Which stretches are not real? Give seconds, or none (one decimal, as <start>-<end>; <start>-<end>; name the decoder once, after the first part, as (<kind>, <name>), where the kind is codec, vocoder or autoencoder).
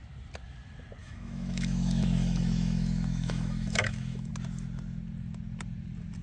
1.0-4.3 (autoencoder, DAC-VAE)